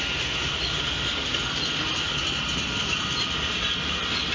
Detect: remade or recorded recorded